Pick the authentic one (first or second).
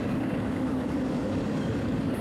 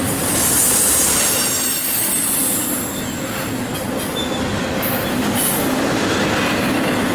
second